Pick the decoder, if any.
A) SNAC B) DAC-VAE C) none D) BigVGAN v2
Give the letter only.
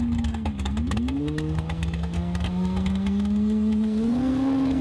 A